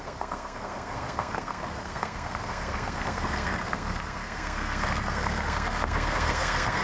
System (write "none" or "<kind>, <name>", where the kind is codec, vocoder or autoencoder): codec, SNAC